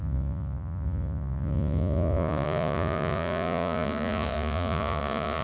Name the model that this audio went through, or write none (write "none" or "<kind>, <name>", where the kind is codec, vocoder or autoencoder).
vocoder, Vocos